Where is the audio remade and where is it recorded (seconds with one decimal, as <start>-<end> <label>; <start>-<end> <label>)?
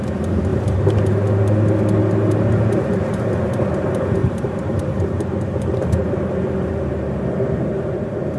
0.0-0.5 recorded; 0.5-1.0 remade; 1.0-2.0 recorded; 2.0-3.2 remade; 3.2-4.2 recorded; 4.2-6.7 remade; 6.7-8.4 recorded